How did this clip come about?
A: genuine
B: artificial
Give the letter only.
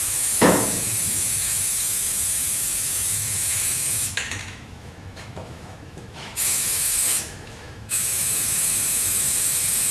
B